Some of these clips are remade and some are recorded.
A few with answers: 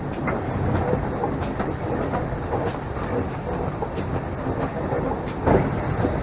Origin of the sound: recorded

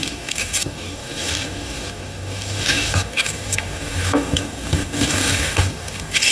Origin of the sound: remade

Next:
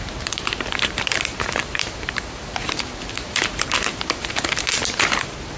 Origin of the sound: remade